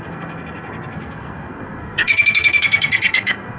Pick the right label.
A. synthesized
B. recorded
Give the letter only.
A